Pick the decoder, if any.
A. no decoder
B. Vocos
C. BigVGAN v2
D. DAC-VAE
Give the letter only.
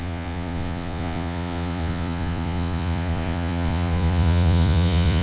B